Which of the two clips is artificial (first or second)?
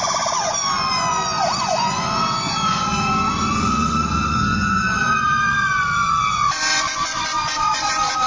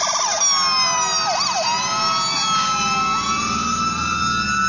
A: first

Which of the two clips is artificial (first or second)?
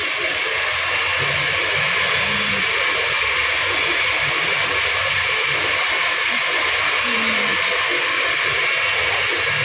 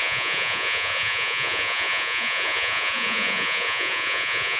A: second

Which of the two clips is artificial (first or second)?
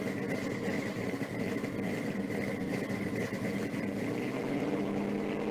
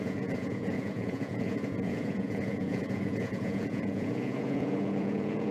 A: second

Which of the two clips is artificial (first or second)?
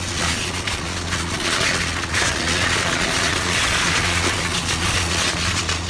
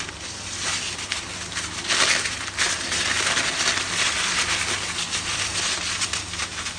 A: first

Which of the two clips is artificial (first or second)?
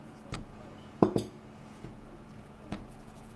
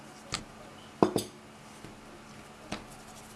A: first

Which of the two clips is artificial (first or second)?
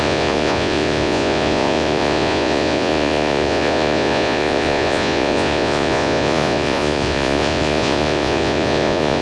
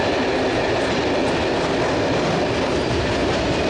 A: first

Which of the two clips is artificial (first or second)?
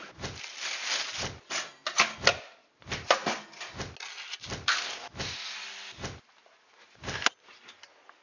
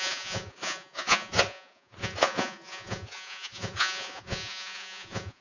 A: second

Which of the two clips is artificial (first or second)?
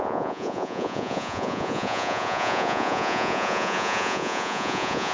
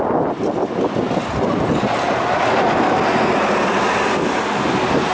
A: first